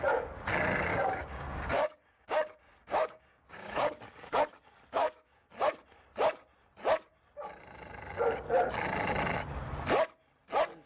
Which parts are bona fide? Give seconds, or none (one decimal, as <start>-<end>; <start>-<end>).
0.0-0.9; 4.0-5.0; 5.5-10.9